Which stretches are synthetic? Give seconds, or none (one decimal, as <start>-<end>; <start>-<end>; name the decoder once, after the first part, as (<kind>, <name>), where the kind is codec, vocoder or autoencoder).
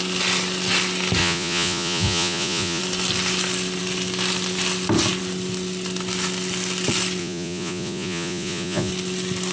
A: 1.2-2.8 (vocoder, Vocos); 7.2-8.9